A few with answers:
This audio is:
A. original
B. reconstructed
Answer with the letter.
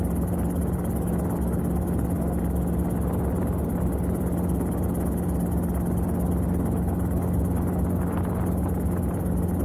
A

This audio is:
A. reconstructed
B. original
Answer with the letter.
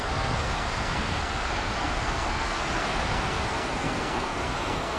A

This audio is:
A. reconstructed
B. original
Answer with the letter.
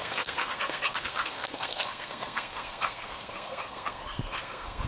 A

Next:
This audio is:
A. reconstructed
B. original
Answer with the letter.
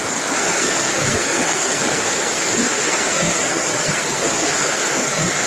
A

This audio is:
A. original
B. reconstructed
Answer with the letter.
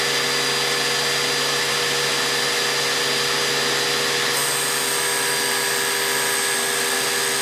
A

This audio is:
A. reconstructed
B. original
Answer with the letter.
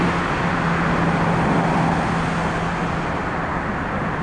B